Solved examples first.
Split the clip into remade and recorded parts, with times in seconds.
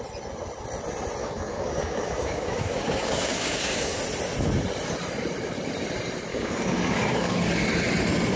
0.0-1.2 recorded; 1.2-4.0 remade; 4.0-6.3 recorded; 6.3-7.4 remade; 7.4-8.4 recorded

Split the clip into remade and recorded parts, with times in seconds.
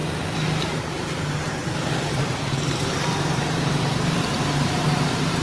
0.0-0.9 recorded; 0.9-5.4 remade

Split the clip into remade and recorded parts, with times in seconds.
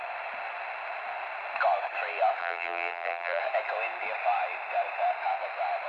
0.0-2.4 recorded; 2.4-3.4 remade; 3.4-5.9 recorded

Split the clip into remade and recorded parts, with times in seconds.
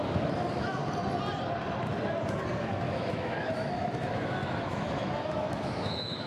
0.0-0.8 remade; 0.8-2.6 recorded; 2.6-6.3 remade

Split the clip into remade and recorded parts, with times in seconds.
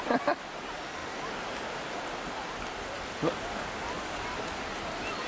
0.0-3.2 recorded; 3.2-3.9 remade; 3.9-5.3 recorded